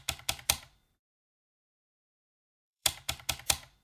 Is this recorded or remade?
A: remade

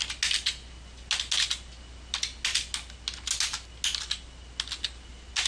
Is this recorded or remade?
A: recorded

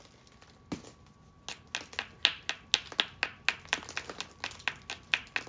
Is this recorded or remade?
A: recorded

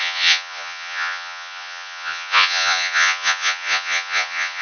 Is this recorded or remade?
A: remade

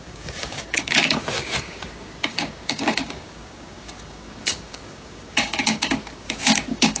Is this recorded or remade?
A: remade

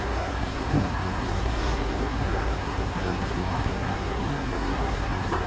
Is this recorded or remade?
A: remade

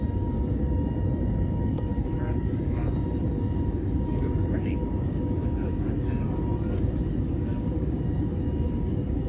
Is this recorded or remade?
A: remade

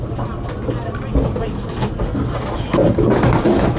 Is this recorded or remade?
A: recorded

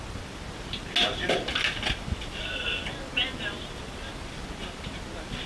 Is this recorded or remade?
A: recorded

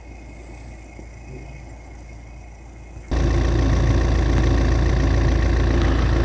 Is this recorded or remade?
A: recorded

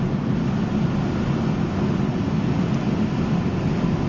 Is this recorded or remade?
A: recorded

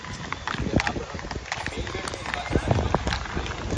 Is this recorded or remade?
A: recorded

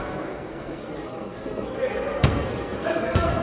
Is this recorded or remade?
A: remade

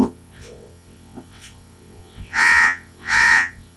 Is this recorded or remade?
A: remade